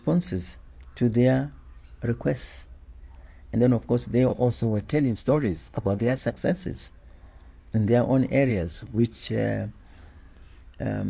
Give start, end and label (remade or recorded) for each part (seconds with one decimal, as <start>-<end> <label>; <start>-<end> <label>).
0.0-4.3 recorded; 4.3-6.3 remade; 6.3-8.5 recorded; 8.5-9.2 remade; 9.2-11.1 recorded